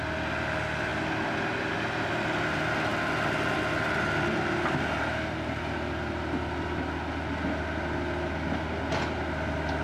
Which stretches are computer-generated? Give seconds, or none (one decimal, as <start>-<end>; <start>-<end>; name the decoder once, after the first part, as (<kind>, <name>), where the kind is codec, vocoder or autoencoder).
none